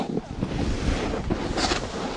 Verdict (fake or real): real